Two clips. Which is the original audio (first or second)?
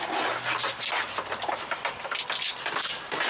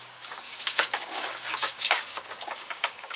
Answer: first